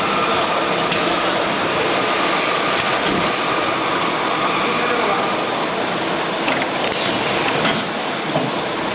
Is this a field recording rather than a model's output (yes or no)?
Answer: yes